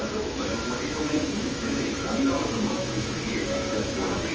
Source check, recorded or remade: remade